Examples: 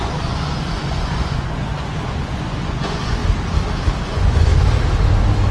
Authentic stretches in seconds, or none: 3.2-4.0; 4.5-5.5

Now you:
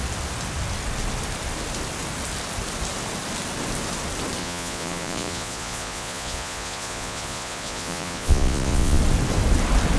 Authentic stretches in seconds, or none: 0.0-4.4; 9.0-10.0

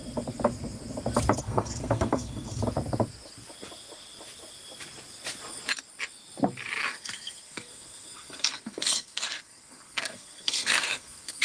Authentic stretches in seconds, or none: 0.0-1.4; 2.6-6.9

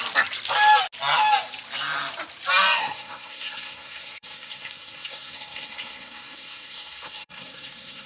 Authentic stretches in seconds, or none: 0.0-2.8

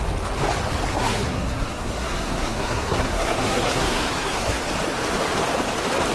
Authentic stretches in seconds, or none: 0.0-0.9; 4.6-6.1

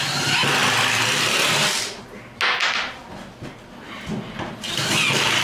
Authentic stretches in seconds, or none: 0.0-5.4